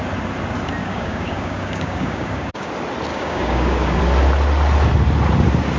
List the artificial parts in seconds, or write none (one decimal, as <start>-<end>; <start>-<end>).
0.8-2.7; 3.1-4.0